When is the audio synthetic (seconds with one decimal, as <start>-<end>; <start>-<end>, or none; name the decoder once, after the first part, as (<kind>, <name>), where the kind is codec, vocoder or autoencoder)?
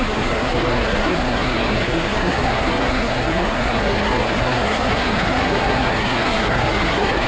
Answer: 0.0-7.3 (codec, SNAC)